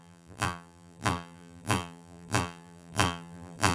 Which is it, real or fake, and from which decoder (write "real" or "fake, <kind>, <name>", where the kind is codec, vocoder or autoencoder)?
fake, vocoder, BigVGAN v2